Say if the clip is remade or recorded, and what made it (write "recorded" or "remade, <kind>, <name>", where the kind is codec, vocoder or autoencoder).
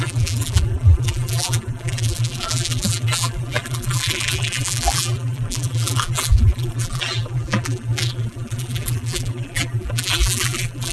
remade, vocoder, BigVGAN v2